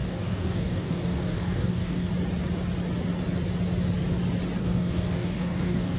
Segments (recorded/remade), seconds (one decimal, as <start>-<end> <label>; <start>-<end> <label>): 0.0-2.1 remade; 2.1-4.6 recorded; 4.6-6.0 remade